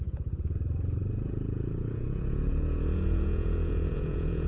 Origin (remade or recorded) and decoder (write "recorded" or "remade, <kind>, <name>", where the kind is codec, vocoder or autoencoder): remade, vocoder, Vocos